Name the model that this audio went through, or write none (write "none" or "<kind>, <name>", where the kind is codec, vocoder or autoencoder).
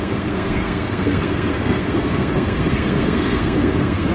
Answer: codec, SNAC